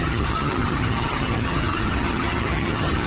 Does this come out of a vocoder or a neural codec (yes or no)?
yes